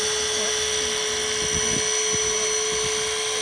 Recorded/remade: recorded